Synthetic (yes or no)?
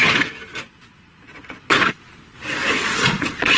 yes